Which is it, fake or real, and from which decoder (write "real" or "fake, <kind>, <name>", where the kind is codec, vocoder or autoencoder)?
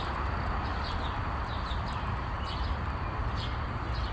real